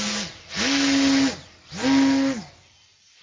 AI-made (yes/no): no